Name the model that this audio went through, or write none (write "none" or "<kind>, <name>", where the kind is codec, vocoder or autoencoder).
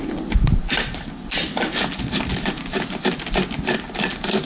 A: none